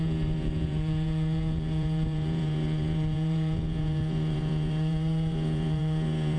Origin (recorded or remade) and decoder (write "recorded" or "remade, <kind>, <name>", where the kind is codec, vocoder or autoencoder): remade, vocoder, Vocos